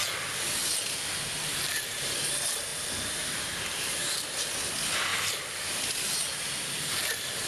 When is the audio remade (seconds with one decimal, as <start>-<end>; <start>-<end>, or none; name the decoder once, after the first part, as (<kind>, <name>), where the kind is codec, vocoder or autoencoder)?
2.7-4.2 (vocoder, BigVGAN v2); 5.1-6.3